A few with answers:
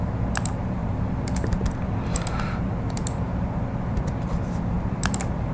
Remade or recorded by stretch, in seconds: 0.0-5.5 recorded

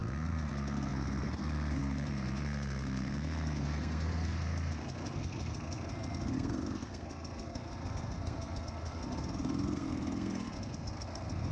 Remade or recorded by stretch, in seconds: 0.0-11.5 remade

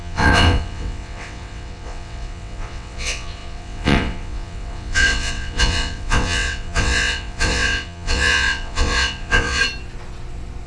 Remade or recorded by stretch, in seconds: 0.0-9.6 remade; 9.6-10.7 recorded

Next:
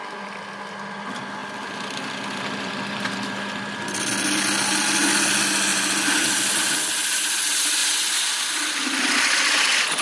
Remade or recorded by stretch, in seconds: 0.0-1.4 recorded; 1.4-4.1 remade; 4.1-5.7 recorded; 5.7-6.7 remade; 6.7-10.0 recorded

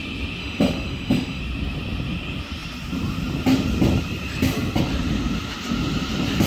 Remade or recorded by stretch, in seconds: 0.0-0.4 recorded; 0.4-1.4 remade; 1.4-6.5 recorded